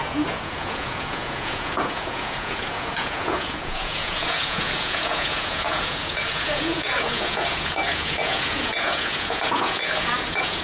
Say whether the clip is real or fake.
fake